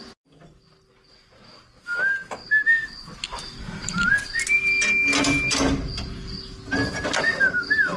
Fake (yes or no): no